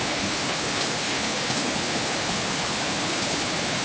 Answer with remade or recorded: remade